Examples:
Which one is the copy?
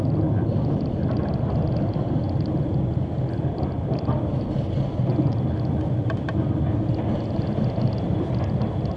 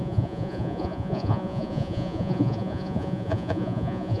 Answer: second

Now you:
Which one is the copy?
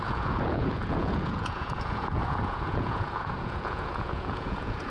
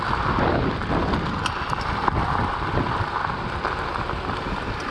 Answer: first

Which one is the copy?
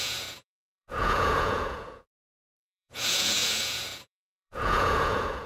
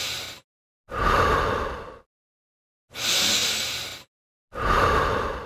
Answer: first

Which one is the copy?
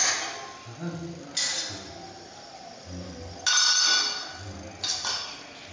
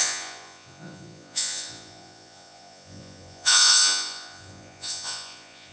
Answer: second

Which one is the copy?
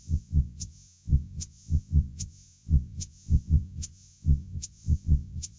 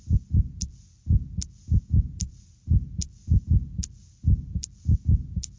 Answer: first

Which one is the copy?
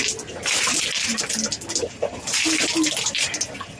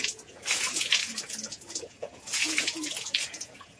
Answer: second